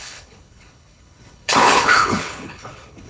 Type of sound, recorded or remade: remade